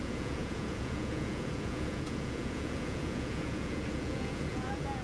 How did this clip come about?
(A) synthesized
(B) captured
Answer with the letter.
A